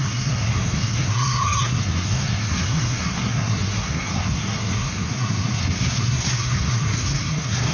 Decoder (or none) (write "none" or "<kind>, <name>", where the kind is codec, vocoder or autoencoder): codec, SNAC